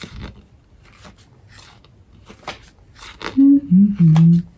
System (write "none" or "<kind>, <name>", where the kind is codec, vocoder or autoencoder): none